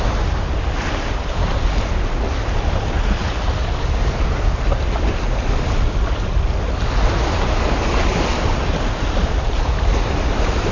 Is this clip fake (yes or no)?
no